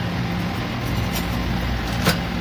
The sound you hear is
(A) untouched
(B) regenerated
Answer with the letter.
A